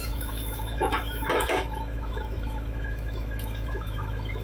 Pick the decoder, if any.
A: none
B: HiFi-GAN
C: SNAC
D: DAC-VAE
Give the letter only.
D